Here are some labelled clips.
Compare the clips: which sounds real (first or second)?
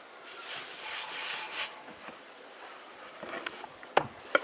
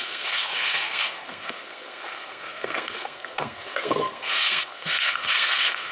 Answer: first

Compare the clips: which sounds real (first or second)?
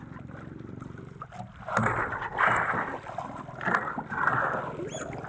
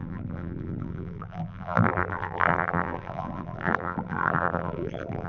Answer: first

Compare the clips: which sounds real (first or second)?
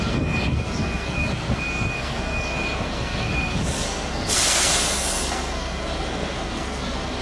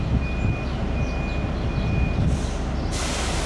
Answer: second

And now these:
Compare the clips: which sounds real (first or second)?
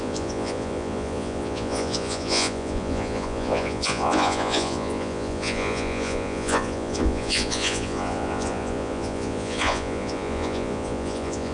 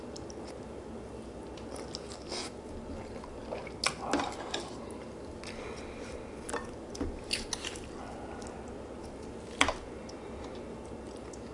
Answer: second